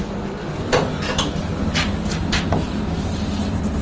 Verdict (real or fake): real